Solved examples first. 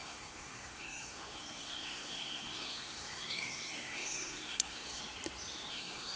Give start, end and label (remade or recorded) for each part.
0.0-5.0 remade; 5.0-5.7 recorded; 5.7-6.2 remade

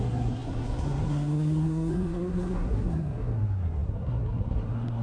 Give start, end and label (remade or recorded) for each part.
0.0-5.0 remade